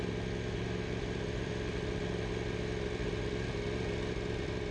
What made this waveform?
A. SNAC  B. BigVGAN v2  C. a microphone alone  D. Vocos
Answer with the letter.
C